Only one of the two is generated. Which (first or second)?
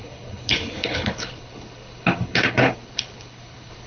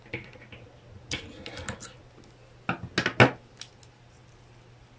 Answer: first